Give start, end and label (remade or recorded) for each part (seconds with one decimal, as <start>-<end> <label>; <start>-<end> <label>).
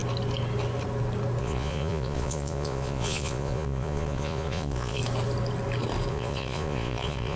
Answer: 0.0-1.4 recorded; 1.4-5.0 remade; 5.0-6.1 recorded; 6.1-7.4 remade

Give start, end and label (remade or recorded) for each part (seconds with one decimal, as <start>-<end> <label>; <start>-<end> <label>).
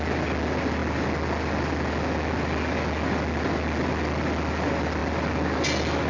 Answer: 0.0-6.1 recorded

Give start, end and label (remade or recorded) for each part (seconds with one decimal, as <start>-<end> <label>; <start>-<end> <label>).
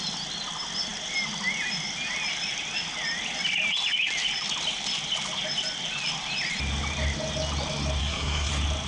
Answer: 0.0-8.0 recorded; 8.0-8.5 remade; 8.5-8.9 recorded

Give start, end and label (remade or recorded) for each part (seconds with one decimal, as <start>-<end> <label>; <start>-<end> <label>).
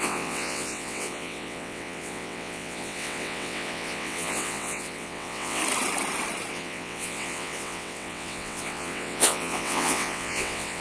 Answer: 0.0-5.6 remade; 5.6-6.5 recorded; 6.5-10.8 remade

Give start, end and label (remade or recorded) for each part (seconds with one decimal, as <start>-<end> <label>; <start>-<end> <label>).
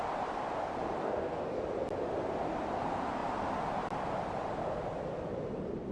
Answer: 0.0-1.0 recorded; 1.0-1.6 remade; 1.6-5.9 recorded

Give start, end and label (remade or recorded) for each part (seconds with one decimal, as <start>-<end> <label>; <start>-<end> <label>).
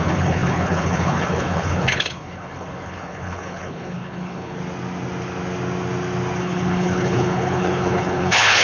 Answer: 0.0-4.6 remade; 4.6-6.4 recorded; 6.4-8.6 remade